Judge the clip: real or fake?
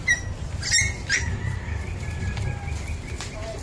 real